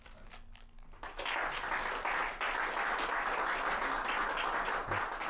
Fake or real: real